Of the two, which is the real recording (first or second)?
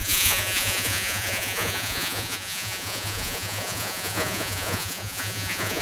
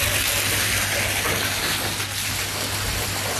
second